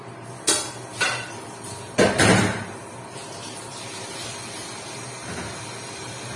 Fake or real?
real